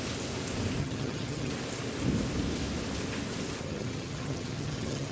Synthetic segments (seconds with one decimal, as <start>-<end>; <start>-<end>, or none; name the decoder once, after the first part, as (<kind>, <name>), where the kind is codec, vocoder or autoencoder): 0.8-1.5 (vocoder, HiFi-GAN); 3.6-5.1